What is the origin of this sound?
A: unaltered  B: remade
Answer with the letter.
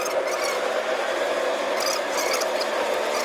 A